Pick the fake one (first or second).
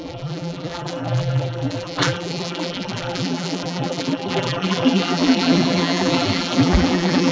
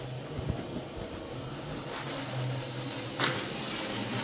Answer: first